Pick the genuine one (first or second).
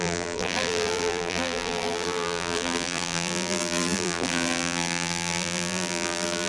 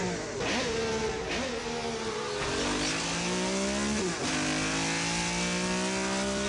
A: second